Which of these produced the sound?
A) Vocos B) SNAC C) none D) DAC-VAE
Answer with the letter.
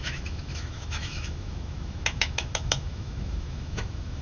D